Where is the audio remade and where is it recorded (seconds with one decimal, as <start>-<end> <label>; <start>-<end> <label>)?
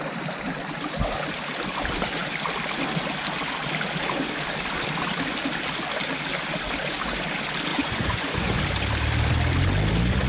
0.0-7.7 recorded; 7.7-8.6 remade; 8.6-10.3 recorded